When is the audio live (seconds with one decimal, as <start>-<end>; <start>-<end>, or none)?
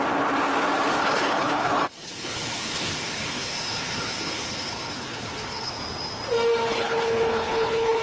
0.0-1.0; 5.7-6.7